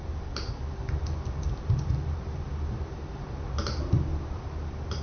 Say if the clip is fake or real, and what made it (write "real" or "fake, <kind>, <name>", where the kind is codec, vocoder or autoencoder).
real